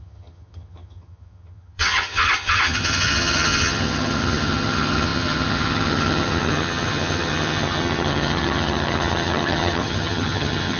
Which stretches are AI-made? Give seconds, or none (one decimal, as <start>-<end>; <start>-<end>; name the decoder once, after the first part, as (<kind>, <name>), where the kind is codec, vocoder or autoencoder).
0.0-10.8 (vocoder, HiFi-GAN)